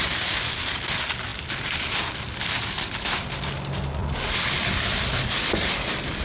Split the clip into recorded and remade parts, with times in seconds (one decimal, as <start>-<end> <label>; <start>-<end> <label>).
0.0-1.3 recorded; 1.3-3.1 remade; 3.1-4.0 recorded; 4.0-4.9 remade; 4.9-6.2 recorded